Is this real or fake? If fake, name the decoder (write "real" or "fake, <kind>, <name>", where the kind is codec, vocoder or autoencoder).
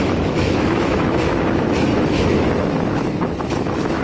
fake, autoencoder, DAC-VAE